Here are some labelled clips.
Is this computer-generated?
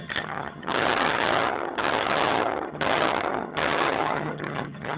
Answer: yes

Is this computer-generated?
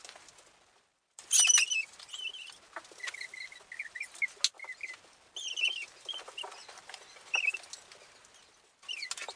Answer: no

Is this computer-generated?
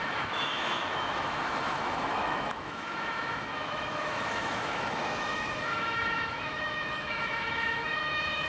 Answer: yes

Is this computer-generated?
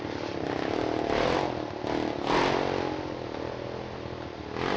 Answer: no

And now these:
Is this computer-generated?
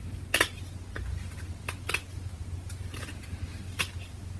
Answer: no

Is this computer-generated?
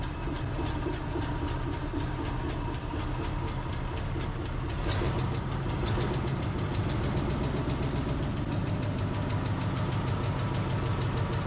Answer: no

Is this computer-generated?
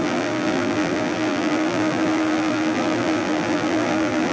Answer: yes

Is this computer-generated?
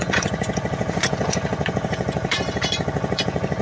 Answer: yes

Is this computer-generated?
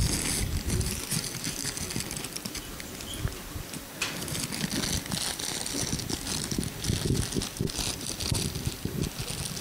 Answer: no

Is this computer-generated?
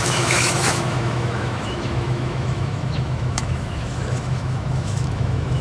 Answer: yes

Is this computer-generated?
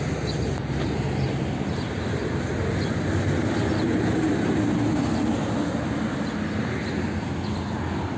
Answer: no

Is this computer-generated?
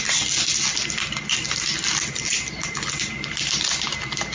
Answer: no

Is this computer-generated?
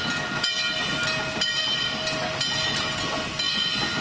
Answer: no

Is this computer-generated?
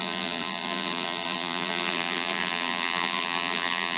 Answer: yes